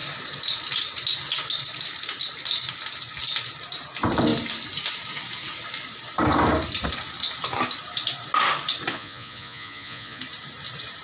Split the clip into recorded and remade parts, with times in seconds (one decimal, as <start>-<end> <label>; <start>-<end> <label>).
0.0-8.9 recorded; 8.9-10.2 remade; 10.2-11.0 recorded